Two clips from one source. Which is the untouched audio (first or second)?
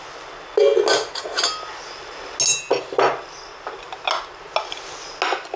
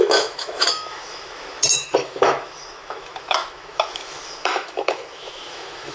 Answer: first